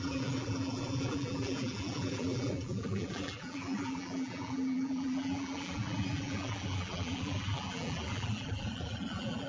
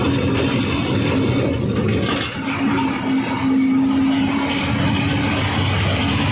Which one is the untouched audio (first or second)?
second